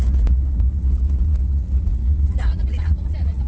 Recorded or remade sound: remade